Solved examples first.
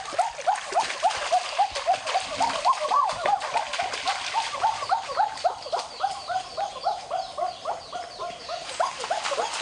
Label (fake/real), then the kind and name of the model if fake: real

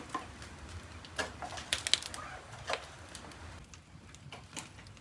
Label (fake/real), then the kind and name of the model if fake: real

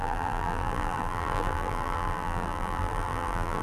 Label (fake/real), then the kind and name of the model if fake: fake, vocoder, BigVGAN v2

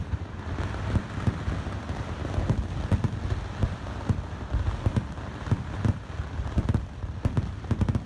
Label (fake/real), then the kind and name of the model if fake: real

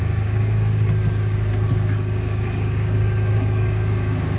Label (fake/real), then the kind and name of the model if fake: fake, codec, DAC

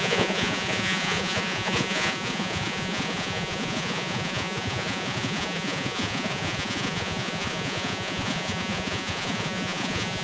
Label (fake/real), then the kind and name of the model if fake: fake, vocoder, Vocos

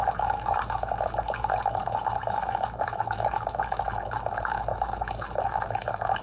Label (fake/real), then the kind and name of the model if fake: fake, autoencoder, DAC-VAE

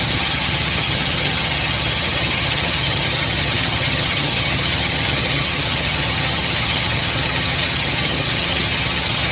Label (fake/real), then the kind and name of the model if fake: fake, vocoder, HiFi-GAN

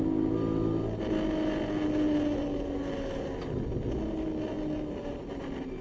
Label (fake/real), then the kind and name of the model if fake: real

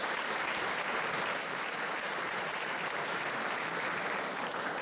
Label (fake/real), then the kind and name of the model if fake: fake, vocoder, BigVGAN v2